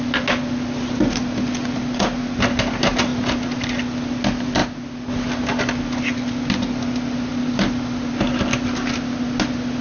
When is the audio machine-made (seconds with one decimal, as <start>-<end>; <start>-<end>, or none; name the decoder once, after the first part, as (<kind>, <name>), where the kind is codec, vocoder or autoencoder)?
3.1-3.8 (vocoder, BigVGAN v2); 7.3-8.1